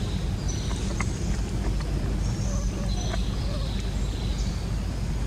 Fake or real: real